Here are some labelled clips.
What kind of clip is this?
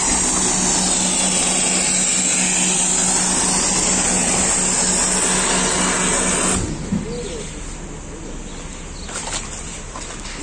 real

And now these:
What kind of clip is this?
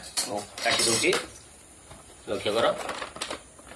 fake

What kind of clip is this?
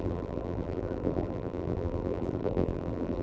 fake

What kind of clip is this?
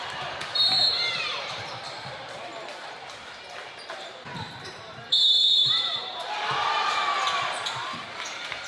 fake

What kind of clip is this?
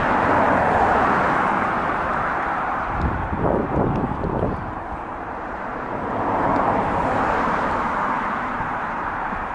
fake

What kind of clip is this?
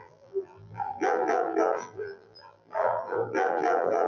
fake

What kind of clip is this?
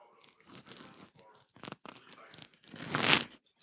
real